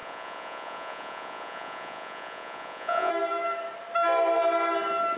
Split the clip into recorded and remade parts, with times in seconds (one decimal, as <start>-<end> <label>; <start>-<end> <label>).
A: 0.0-3.1 remade; 3.1-5.2 recorded

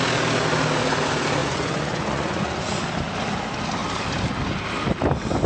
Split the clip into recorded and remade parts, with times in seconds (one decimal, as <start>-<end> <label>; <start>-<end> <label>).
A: 0.0-1.4 recorded; 1.4-2.7 remade; 2.7-5.5 recorded

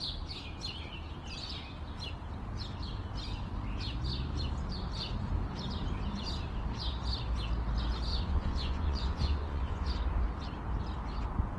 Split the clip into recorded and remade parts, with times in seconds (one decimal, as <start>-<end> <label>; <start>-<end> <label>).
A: 0.0-8.1 recorded; 8.1-9.9 remade; 9.9-11.6 recorded

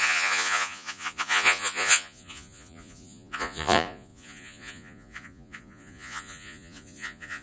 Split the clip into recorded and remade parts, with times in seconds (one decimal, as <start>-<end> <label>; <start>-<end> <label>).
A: 0.0-7.4 remade

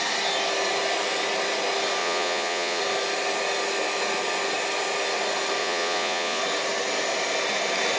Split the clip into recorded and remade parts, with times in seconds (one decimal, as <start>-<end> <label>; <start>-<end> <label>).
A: 0.0-2.0 recorded; 2.0-2.8 remade; 2.8-5.6 recorded; 5.6-6.4 remade; 6.4-8.0 recorded

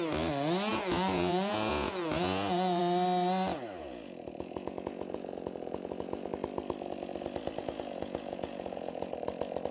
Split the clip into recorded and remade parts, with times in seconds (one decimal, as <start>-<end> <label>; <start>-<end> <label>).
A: 0.0-0.7 recorded; 0.7-2.8 remade; 2.8-3.8 recorded; 3.8-6.3 remade; 6.3-7.6 recorded; 7.6-9.1 remade; 9.1-9.7 recorded

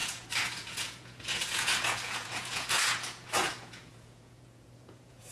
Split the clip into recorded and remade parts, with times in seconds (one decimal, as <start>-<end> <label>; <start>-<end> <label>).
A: 0.0-5.3 remade

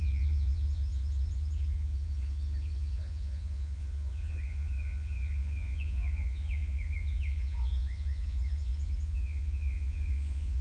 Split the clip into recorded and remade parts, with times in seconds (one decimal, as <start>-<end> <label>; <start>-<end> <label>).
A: 0.0-10.6 remade